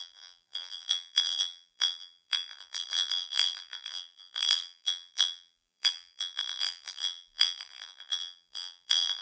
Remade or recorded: remade